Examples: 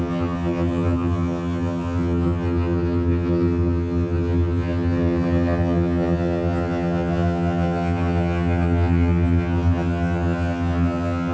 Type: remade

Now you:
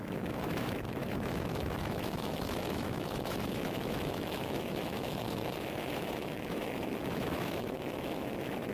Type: remade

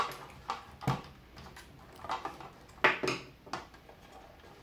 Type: recorded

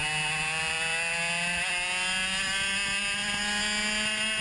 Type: recorded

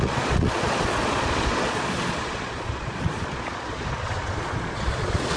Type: remade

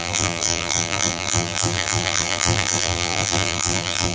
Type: remade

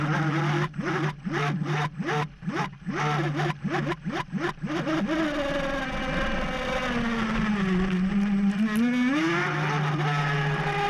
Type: recorded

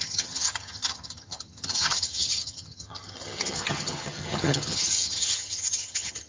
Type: remade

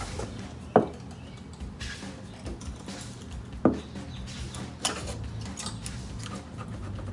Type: recorded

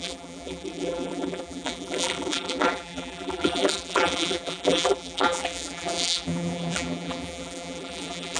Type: remade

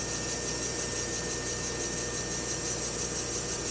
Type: recorded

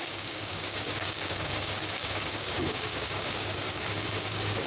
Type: remade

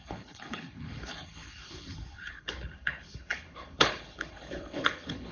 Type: remade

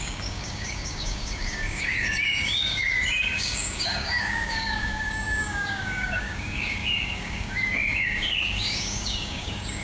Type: remade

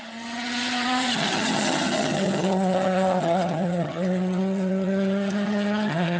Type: remade